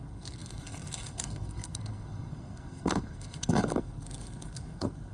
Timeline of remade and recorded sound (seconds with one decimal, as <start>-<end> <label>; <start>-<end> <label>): 0.0-5.1 remade